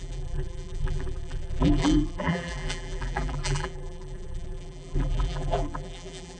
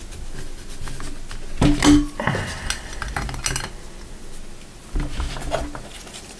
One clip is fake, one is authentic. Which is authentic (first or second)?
second